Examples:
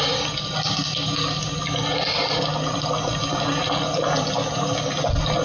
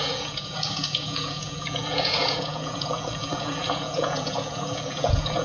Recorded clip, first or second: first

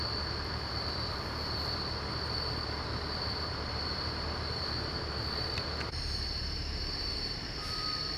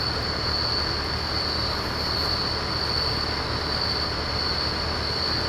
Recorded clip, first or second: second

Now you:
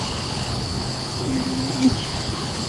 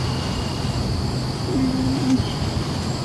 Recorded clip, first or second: second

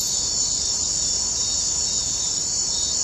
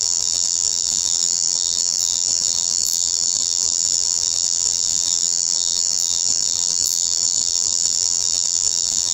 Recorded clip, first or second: first